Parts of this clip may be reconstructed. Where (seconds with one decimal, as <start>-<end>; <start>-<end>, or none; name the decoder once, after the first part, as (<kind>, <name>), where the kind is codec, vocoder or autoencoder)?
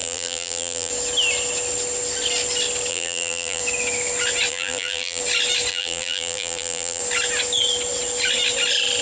0.0-0.9 (vocoder, BigVGAN v2); 2.9-3.6; 4.5-5.2; 5.7-7.0